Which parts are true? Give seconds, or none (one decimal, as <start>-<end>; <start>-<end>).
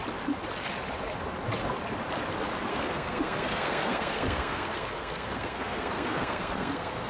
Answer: 0.0-2.7